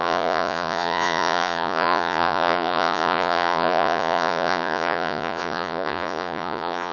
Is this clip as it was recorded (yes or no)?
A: no